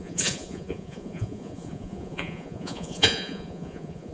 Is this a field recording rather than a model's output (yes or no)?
no